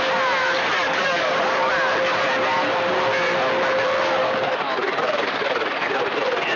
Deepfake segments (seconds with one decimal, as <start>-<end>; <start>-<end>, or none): 0.4-1.7; 4.2-5.9